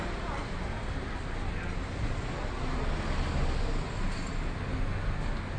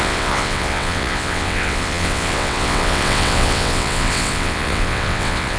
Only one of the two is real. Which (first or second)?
first